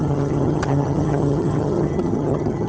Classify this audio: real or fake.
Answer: fake